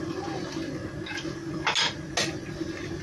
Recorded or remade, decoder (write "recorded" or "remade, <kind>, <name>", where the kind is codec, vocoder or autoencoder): recorded